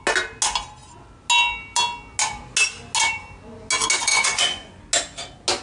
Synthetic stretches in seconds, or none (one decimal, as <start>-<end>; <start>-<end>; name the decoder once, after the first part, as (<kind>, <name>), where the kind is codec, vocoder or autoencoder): 4.1-4.8 (vocoder, Vocos)